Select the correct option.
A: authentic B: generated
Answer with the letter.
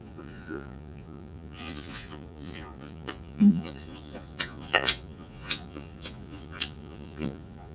B